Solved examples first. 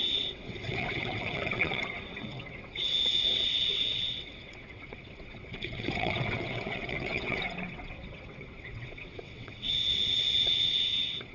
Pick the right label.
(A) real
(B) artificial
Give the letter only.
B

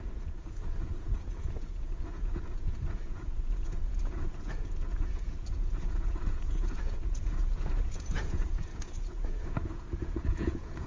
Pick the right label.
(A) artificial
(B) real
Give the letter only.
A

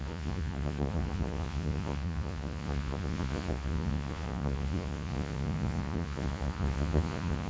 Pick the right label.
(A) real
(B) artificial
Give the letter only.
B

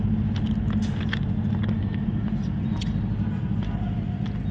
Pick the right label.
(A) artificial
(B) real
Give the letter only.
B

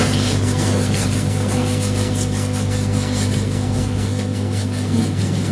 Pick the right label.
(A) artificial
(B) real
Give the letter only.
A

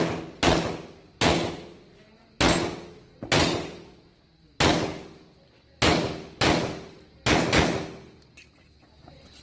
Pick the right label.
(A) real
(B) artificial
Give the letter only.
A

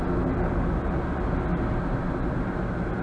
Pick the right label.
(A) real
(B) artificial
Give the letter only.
A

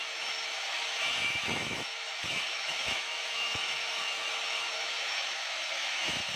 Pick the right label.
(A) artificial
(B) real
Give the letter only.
A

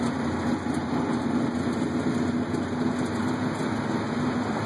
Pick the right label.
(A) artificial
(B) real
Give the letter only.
B